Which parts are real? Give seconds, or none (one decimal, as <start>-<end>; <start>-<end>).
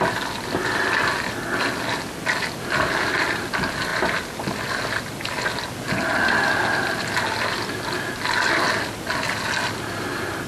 0.0-10.5